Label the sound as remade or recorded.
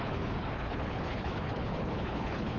remade